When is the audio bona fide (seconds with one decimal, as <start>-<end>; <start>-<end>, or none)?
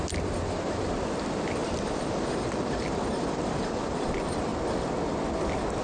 0.0-1.6; 4.1-5.8